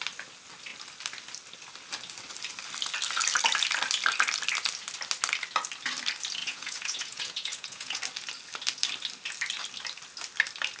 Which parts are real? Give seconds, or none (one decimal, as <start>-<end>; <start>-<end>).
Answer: 0.0-6.4; 8.0-10.8

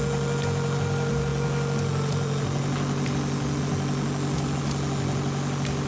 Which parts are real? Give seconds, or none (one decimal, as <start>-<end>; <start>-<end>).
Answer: 0.0-5.9

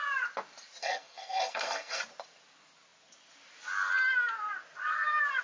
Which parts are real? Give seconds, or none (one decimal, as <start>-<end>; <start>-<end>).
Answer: 0.0-0.8; 2.0-5.4

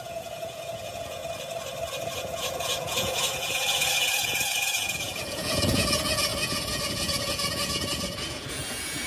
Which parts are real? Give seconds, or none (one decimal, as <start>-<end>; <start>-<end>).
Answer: 1.2-2.0

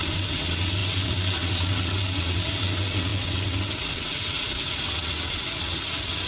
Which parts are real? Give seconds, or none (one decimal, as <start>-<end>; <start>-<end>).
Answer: none

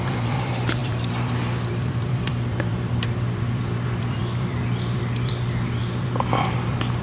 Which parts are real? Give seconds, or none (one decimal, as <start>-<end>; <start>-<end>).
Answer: none